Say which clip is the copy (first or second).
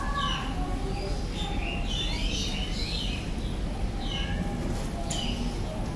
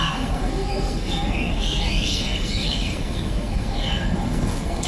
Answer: second